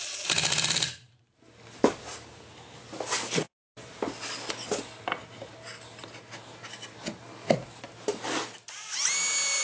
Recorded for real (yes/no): yes